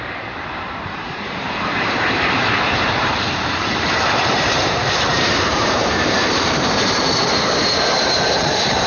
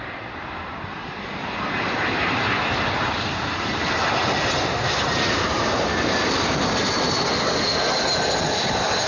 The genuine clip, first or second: second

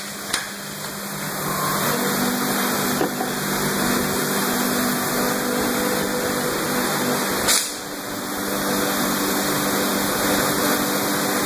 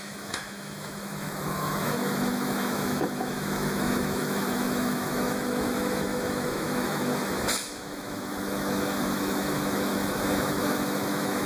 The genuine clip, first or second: first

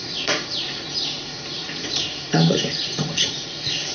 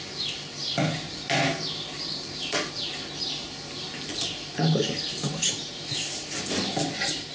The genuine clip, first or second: second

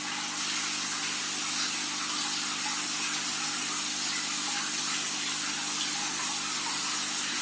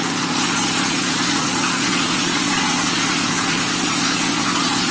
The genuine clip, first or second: first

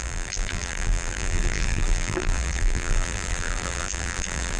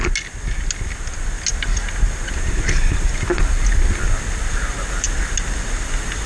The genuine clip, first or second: second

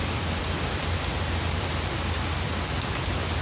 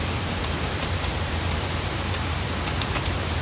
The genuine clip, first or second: first